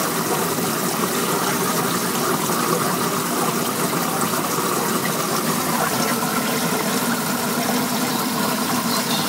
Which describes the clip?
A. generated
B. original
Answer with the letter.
B